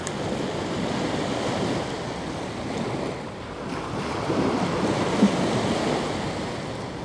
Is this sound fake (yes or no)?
no